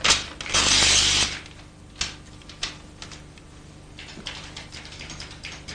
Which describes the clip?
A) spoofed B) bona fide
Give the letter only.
B